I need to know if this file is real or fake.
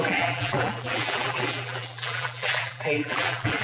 fake